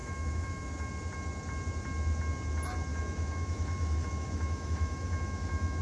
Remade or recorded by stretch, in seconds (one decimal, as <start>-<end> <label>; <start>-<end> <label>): 0.0-0.9 remade; 0.9-2.9 recorded; 2.9-5.8 remade